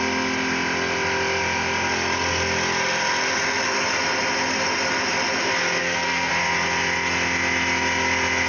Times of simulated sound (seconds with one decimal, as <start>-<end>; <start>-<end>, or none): 5.8-6.3